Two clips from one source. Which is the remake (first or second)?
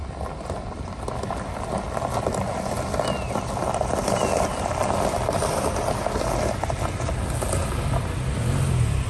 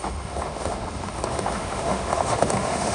second